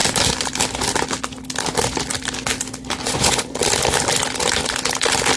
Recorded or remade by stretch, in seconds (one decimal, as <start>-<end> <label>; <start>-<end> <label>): 0.0-3.0 recorded; 3.0-3.6 remade; 3.6-5.4 recorded